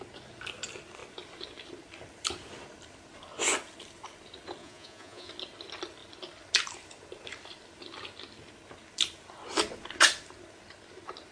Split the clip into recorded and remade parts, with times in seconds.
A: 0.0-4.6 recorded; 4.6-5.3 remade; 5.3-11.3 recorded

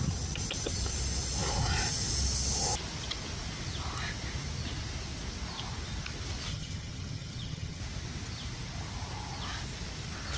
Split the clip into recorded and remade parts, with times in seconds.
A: 0.0-6.5 recorded; 6.5-7.8 remade; 7.8-10.4 recorded

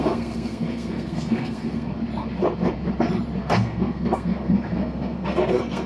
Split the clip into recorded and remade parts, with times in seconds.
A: 0.0-2.0 remade; 2.0-3.4 recorded; 3.4-5.9 remade